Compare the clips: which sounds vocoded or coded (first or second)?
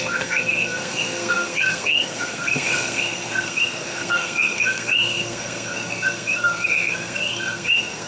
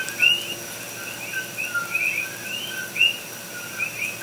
first